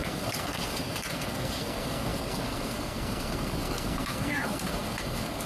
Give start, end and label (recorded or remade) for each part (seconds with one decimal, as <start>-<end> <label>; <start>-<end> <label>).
0.0-5.5 remade